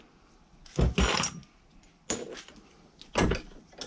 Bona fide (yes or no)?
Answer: yes